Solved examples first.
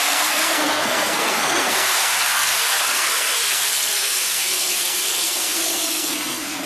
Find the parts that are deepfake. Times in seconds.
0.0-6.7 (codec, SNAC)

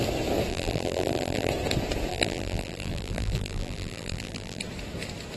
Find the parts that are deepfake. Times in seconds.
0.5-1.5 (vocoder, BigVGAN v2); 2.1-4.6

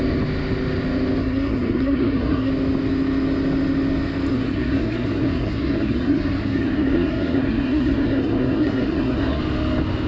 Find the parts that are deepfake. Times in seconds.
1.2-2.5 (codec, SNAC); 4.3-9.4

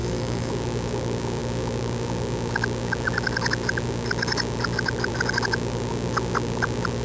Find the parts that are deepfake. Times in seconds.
0.0-0.5 (codec, DAC)

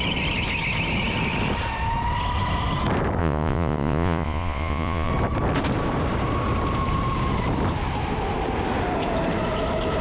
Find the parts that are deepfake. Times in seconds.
3.2-5.1 (vocoder, Vocos)

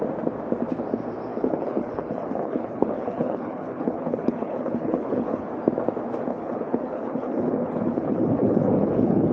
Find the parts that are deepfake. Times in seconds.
1.3-5.5 (codec, HILCodec); 6.3-9.3